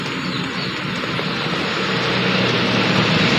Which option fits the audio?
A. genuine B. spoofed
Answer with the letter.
A